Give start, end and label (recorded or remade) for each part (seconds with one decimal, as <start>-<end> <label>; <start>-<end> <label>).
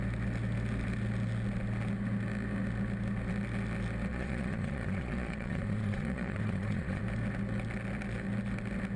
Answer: 0.0-4.1 recorded; 4.1-7.0 remade; 7.0-9.0 recorded